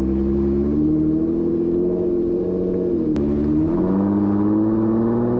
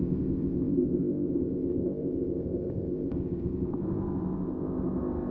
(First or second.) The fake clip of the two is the second